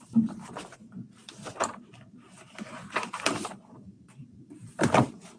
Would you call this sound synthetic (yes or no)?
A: yes